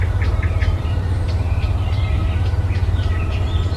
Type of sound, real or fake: fake